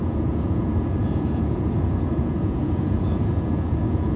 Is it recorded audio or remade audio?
remade